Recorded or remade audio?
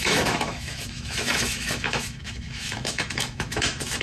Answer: remade